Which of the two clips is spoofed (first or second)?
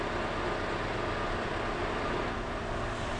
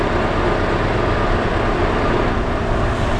second